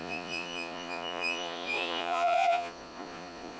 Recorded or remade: remade